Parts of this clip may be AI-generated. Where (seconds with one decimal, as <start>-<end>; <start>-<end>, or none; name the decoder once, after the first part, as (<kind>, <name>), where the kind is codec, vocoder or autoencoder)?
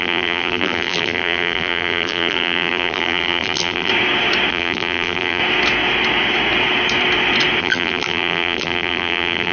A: 0.0-3.9 (vocoder, BigVGAN v2); 4.5-5.4; 7.6-9.5